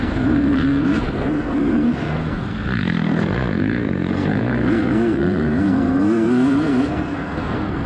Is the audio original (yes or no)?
no